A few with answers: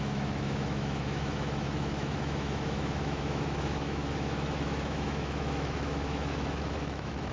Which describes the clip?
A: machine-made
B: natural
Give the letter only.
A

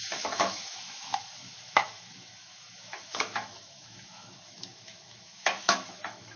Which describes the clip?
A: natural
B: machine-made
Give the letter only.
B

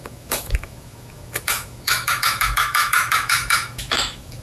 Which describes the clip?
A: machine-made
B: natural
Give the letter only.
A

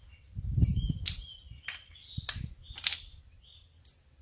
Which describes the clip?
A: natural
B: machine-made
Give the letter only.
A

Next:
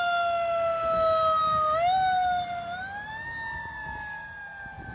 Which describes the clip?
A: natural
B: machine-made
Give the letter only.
A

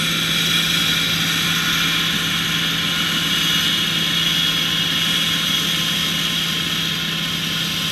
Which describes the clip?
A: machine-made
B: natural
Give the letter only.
B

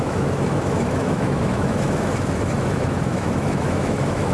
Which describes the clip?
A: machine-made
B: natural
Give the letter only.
A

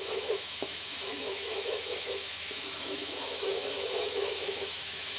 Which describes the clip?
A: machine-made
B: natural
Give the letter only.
A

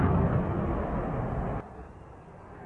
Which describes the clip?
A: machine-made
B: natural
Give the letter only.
B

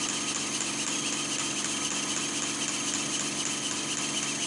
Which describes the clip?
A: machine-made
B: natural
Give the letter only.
B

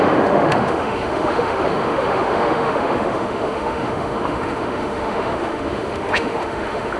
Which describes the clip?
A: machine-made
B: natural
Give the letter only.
A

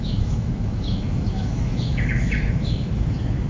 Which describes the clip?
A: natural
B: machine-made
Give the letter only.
B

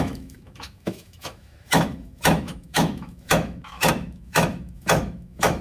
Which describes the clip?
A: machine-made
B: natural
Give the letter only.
A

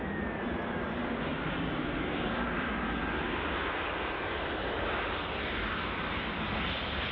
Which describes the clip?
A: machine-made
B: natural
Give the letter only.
B